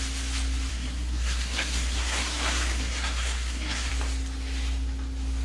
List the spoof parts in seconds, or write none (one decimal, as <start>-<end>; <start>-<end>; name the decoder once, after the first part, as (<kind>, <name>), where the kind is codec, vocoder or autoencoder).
0.7-3.9 (codec, SNAC)